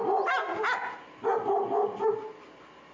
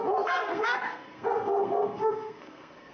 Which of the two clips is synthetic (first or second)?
second